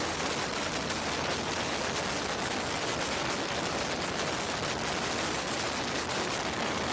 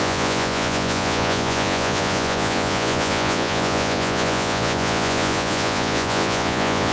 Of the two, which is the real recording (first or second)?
first